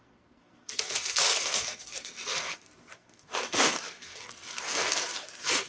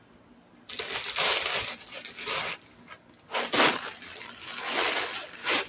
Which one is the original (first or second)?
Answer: second